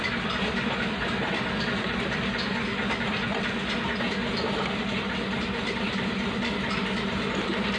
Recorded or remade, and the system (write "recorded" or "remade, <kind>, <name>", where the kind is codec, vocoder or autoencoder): recorded